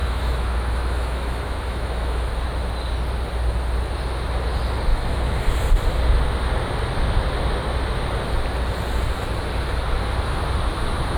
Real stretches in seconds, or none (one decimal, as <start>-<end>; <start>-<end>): 2.3-4.9; 5.5-11.2